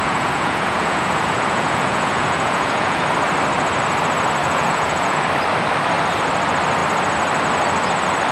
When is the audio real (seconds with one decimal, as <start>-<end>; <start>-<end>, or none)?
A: 3.0-4.4; 5.2-8.3